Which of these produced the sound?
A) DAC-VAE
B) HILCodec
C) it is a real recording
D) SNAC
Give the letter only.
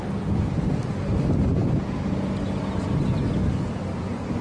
C